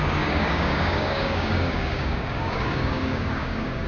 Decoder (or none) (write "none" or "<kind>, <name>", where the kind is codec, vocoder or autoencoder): codec, DAC